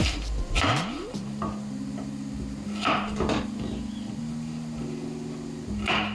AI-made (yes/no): yes